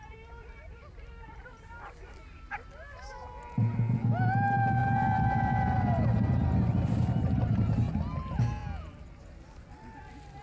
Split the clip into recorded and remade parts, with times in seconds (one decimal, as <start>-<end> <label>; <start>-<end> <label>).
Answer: 0.0-4.8 recorded; 4.8-7.9 remade; 7.9-10.4 recorded